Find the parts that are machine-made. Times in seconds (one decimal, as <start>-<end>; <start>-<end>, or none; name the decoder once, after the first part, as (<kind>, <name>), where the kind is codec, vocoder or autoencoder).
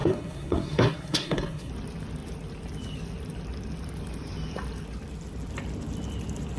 0.0-1.7 (codec, SNAC)